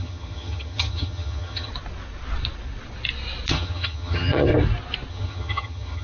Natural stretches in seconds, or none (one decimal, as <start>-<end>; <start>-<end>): 1.7-3.5; 4.5-5.1